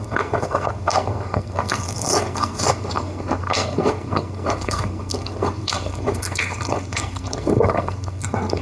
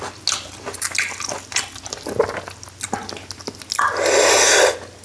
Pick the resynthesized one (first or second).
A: first